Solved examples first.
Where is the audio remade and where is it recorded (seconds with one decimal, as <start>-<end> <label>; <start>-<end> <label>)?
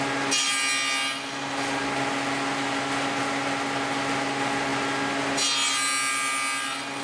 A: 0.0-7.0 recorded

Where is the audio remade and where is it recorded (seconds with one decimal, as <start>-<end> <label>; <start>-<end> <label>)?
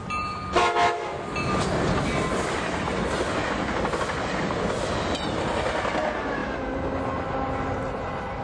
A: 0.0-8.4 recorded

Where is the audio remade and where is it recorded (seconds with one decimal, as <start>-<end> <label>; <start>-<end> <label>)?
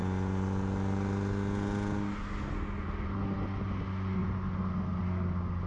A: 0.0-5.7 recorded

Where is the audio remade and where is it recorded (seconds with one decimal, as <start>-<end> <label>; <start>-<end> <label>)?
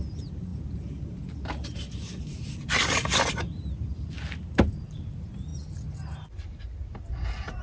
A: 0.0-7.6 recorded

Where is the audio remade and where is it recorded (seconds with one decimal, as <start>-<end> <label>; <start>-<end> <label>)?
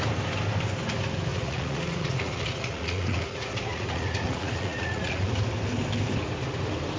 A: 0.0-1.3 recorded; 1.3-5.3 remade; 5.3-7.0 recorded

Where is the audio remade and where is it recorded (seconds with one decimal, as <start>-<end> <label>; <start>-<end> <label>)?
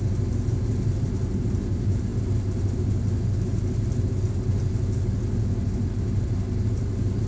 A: 0.0-7.3 recorded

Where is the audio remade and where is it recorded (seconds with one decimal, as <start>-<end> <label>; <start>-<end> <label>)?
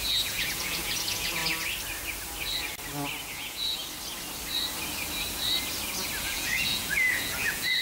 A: 0.0-1.4 remade; 1.4-3.3 recorded; 3.3-3.8 remade; 3.8-6.2 recorded; 6.2-7.8 remade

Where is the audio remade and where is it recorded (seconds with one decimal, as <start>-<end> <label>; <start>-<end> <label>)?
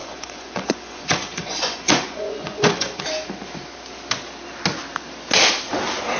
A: 0.0-3.0 remade; 3.0-6.2 recorded